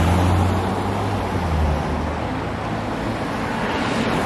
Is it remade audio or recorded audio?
recorded